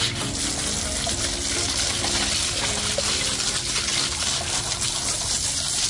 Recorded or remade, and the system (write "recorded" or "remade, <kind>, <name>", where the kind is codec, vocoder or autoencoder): recorded